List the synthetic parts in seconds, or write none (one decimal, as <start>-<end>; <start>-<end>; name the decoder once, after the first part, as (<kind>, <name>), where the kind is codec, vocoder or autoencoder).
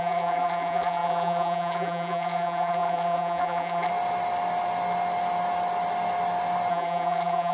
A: 0.0-3.9 (vocoder, BigVGAN v2); 6.7-7.5